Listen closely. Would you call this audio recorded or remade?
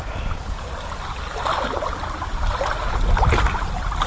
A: recorded